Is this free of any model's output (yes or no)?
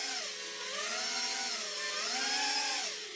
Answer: yes